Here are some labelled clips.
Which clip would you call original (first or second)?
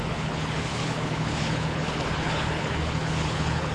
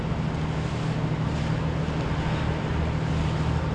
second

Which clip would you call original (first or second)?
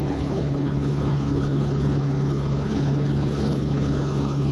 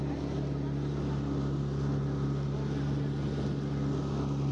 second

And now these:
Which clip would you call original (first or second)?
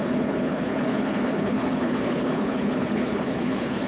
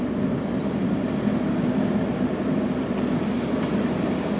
second